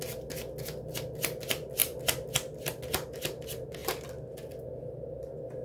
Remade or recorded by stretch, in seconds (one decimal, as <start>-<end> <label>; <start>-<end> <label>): 0.0-5.6 recorded